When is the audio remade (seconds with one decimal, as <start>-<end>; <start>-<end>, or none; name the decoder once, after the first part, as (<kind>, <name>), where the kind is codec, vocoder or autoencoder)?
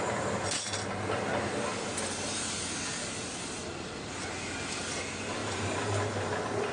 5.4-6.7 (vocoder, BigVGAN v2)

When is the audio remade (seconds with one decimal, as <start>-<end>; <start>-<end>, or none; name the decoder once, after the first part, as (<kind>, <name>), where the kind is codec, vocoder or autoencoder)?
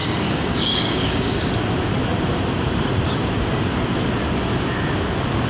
0.0-1.5 (codec, DAC)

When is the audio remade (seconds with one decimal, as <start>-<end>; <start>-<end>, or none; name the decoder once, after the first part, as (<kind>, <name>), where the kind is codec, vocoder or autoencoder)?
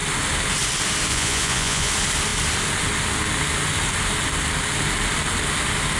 1.1-1.9 (vocoder, Vocos)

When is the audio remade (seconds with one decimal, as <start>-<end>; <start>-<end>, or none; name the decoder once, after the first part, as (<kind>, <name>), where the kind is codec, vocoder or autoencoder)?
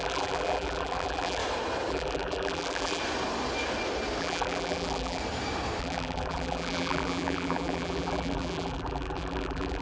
0.0-1.4 (vocoder, BigVGAN v2); 1.9-3.0; 4.2-5.2; 5.8-9.8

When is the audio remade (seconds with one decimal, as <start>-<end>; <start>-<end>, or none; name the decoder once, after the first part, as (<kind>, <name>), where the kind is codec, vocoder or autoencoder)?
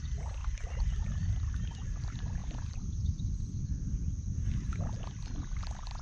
0.4-1.5 (vocoder, BigVGAN v2); 2.4-6.0